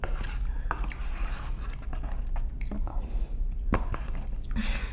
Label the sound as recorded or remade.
recorded